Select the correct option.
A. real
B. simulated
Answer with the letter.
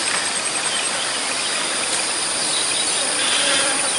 A